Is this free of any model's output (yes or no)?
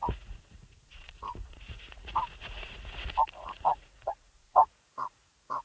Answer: no